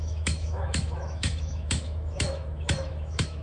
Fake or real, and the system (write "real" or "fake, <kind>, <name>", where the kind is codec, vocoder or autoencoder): fake, autoencoder, DAC-VAE